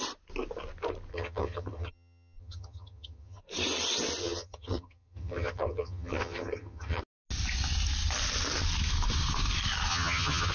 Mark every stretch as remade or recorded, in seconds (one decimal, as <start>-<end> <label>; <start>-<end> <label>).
0.0-1.1 recorded; 1.1-3.4 remade; 3.4-4.2 recorded; 4.2-7.0 remade; 7.0-9.9 recorded; 9.9-10.5 remade